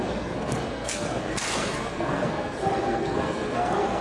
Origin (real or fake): fake